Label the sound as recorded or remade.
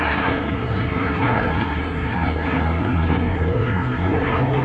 remade